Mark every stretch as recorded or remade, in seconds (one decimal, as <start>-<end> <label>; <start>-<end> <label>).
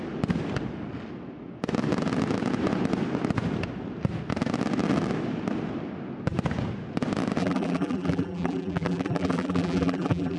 0.0-7.4 recorded; 7.4-10.4 remade